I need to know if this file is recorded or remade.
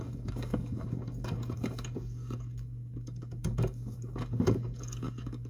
remade